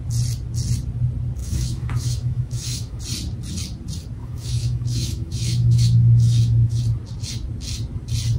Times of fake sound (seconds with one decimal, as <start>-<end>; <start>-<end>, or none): 1.4-3.0; 4.2-6.8